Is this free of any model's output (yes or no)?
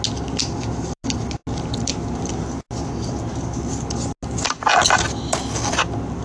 yes